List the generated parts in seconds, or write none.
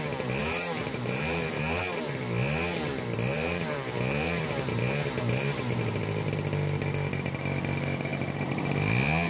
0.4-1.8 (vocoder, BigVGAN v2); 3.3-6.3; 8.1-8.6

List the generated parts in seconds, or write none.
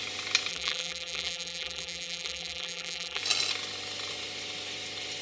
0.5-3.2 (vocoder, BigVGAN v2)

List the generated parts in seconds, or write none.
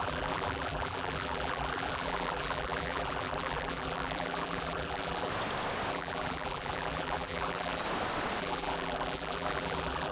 0.0-5.3 (vocoder, BigVGAN v2); 5.9-7.8; 8.4-10.1